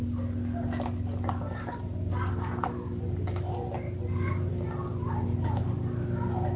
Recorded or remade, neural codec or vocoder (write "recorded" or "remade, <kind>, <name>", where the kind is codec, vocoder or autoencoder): recorded